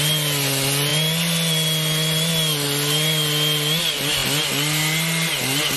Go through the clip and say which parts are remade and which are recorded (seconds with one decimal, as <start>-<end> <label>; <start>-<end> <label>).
0.0-5.8 recorded